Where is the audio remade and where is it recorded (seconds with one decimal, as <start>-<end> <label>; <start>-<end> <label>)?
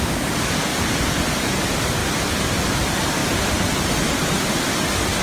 0.0-2.0 recorded; 2.0-2.6 remade; 2.6-5.2 recorded